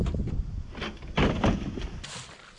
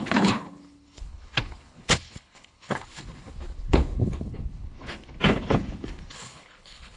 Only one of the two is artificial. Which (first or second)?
second